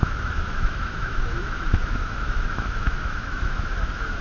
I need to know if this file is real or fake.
fake